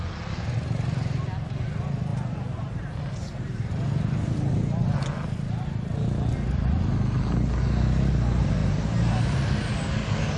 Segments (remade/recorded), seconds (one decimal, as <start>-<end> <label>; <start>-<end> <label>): 0.0-2.1 recorded; 2.1-4.0 remade; 4.0-8.6 recorded; 8.6-9.5 remade; 9.5-10.4 recorded